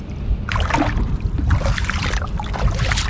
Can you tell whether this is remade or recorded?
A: recorded